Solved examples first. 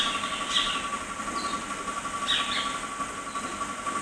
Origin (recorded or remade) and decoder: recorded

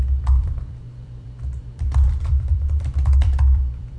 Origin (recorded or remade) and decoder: remade, vocoder, BigVGAN v2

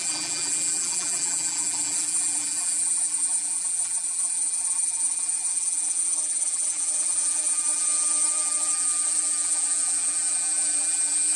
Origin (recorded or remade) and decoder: remade, vocoder, BigVGAN v2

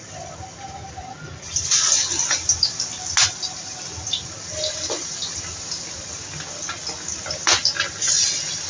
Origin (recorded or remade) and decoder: recorded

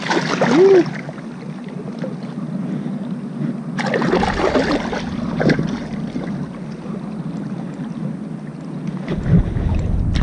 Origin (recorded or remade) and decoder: recorded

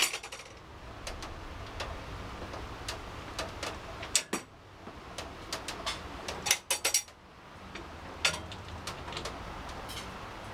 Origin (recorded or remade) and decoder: recorded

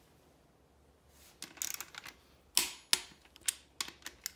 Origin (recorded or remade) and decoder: recorded